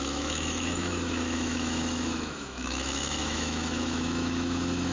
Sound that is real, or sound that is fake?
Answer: fake